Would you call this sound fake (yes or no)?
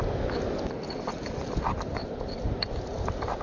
no